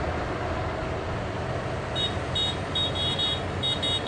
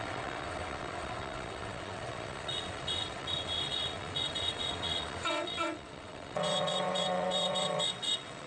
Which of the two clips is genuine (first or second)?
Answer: first